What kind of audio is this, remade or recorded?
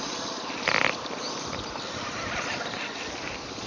recorded